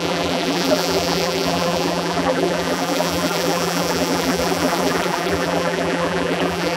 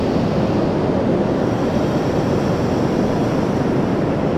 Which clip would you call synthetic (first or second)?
first